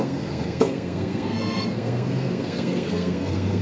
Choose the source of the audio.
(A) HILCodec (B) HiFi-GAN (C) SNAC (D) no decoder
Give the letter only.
C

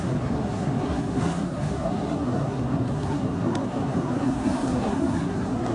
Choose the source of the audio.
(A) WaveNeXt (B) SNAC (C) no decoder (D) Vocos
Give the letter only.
B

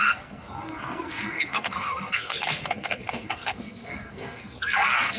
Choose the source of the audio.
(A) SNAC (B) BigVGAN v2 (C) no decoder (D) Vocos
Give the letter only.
A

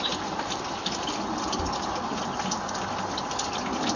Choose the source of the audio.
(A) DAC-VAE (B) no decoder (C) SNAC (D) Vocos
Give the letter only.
B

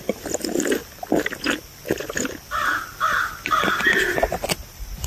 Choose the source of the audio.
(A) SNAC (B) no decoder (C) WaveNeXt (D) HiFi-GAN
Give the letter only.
B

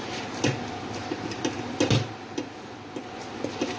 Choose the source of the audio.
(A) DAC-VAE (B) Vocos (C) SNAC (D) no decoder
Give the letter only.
D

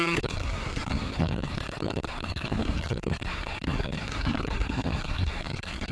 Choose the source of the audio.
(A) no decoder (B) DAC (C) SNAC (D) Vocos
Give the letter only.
C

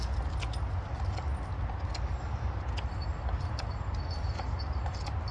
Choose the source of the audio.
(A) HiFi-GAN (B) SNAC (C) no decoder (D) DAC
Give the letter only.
C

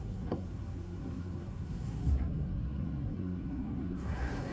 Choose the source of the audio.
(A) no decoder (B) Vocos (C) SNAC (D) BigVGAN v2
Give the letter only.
C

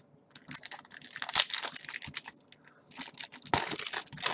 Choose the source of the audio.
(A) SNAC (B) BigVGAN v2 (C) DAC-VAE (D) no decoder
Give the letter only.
D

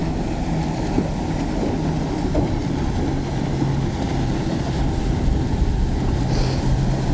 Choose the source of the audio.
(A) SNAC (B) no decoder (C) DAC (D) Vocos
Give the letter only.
B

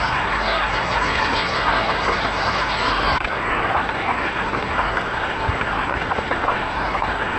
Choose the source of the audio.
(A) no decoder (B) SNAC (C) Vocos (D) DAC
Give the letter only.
B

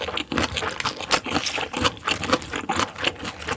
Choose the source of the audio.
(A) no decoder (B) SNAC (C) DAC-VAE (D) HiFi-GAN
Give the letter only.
A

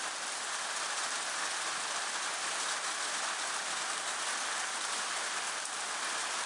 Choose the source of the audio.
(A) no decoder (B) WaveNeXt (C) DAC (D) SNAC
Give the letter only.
A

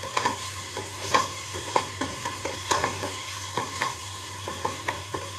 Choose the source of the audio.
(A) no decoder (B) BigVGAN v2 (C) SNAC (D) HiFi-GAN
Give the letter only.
C